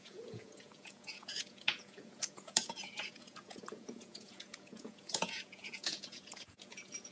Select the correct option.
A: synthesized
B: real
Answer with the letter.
A